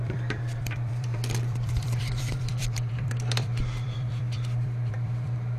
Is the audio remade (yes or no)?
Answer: yes